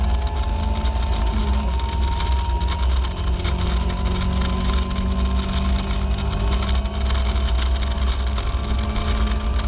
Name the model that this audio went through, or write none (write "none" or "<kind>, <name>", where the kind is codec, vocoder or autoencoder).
none